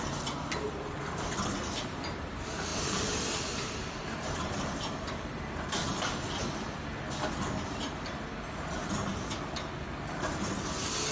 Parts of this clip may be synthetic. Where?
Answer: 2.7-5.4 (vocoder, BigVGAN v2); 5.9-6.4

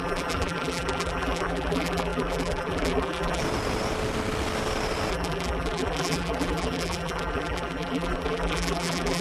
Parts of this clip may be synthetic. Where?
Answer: 0.0-3.4 (vocoder, BigVGAN v2); 5.1-9.2